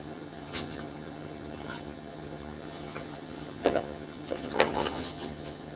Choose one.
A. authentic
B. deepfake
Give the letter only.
B